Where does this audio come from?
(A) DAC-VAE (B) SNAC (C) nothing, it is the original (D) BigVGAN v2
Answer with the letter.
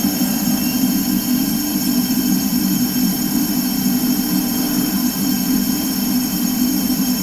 D